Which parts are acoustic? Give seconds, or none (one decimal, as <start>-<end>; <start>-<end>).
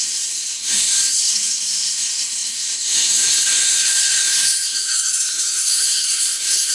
none